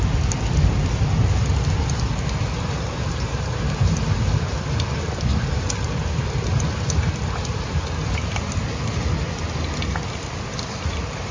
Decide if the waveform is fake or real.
real